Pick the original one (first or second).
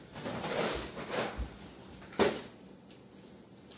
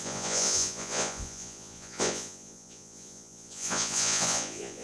first